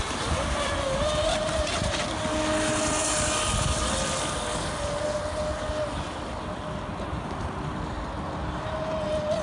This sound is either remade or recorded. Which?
recorded